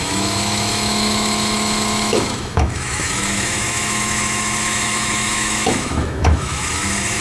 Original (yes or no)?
no